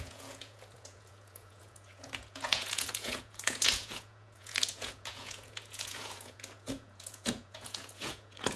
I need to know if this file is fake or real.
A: fake